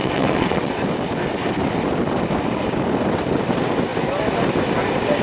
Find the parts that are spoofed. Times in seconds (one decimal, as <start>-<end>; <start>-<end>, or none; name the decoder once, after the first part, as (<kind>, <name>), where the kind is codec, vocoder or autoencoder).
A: 0.0-0.8 (vocoder, WaveNeXt)